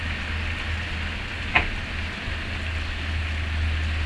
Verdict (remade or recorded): recorded